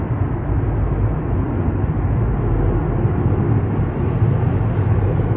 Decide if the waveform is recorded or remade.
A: recorded